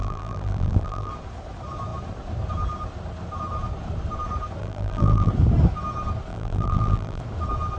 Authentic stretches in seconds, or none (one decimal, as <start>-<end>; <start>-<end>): 1.1-4.6; 5.3-6.3; 7.2-7.8